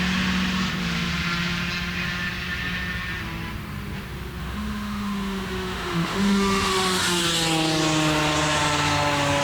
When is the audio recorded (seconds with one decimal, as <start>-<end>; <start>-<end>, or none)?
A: 0.0-4.4; 7.2-9.4